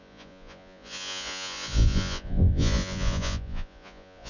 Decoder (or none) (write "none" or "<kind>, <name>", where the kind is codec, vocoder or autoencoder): vocoder, Vocos